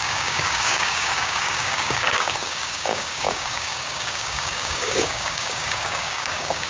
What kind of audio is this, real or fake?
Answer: fake